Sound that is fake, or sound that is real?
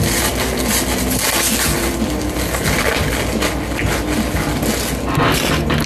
real